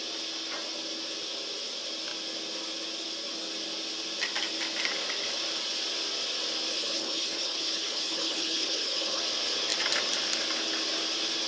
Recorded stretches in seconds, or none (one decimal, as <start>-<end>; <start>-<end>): 0.0-6.7; 9.2-11.5